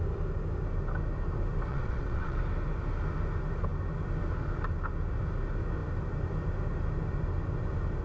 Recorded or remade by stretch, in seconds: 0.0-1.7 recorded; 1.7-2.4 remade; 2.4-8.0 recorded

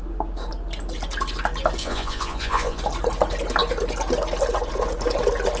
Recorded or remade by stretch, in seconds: 0.0-1.8 recorded; 1.8-2.8 remade; 2.8-5.6 recorded